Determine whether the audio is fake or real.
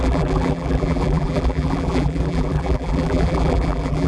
fake